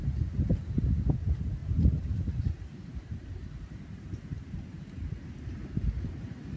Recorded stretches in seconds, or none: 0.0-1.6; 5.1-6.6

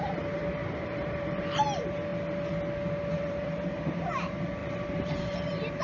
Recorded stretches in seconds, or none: 2.1-3.1

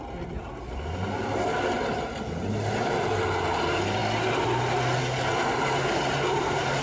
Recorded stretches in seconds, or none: 0.0-6.8

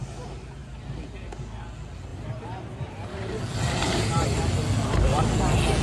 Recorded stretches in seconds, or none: 0.0-2.1; 3.4-3.8; 4.4-5.8

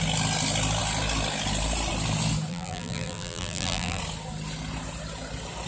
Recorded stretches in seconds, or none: 0.0-2.5; 4.0-5.7